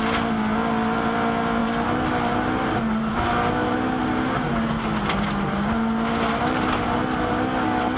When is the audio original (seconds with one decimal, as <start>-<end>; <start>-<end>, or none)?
0.0-8.0